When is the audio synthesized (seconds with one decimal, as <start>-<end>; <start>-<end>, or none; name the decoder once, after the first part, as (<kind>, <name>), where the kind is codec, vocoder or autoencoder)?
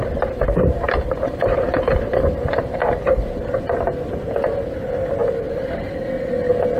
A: 0.4-3.4 (vocoder, BigVGAN v2); 5.2-5.9